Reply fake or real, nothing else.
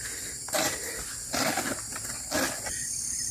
real